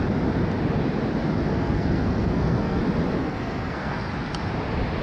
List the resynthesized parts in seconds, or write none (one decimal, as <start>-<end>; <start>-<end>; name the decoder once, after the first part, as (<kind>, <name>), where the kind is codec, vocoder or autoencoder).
1.5-2.8 (codec, SNAC); 3.2-4.1